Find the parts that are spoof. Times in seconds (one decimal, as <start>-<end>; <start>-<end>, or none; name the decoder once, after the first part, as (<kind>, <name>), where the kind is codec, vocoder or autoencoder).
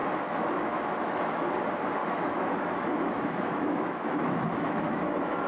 0.0-1.5 (autoencoder, DAC-VAE); 2.0-5.5